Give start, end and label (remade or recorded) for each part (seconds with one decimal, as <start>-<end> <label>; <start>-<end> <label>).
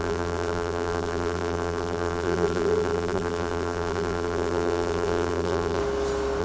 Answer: 0.0-5.8 remade; 5.8-6.4 recorded